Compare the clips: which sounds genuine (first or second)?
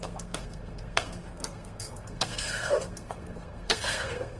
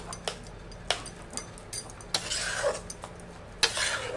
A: second